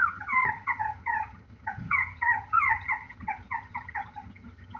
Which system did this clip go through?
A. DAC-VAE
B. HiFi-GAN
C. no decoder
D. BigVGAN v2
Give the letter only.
B